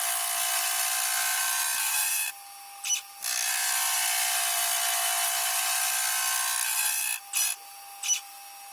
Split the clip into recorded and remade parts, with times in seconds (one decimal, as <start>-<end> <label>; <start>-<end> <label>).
0.0-1.3 recorded; 1.3-2.3 remade; 2.3-8.7 recorded